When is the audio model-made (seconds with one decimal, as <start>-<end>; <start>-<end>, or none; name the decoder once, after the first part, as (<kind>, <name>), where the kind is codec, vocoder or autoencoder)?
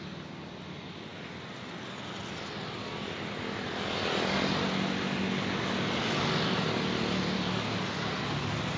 none